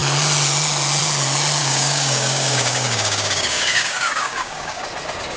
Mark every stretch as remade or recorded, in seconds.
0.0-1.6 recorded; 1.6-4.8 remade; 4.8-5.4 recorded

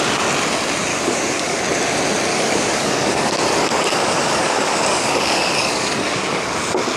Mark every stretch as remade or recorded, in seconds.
0.0-0.9 recorded; 0.9-1.6 remade; 1.6-2.3 recorded; 2.3-6.5 remade; 6.5-7.0 recorded

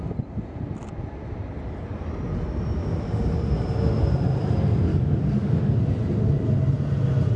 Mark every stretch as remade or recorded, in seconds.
0.0-4.9 recorded; 4.9-5.8 remade; 5.8-7.4 recorded